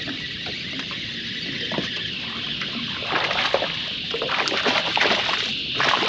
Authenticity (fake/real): real